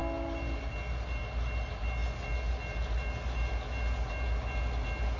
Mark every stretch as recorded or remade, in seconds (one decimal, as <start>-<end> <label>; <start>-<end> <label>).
0.0-5.2 recorded